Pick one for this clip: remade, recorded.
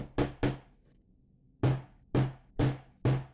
recorded